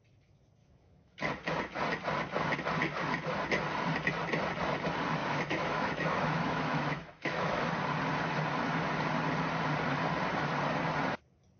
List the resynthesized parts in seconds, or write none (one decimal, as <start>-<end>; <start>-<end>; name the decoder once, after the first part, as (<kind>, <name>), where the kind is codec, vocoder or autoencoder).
0.6-1.3 (autoencoder, DAC-VAE); 5.2-7.6